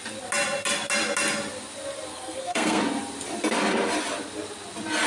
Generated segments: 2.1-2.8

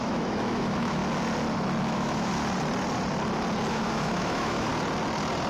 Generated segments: 0.0-1.0; 1.8-2.3; 3.7-4.7

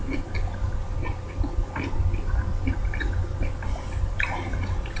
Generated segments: none

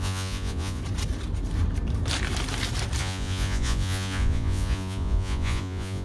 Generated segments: 0.0-0.8; 3.0-6.0